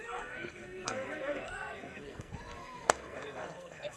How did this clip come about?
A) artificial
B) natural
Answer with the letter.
A